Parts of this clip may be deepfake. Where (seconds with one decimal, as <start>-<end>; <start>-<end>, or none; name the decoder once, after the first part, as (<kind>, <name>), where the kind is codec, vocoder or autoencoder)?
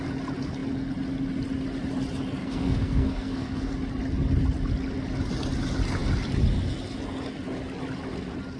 2.4-3.7 (codec, SNAC)